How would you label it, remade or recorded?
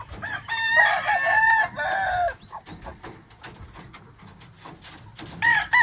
recorded